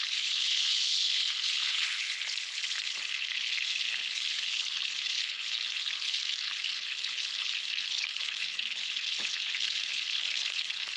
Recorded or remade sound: remade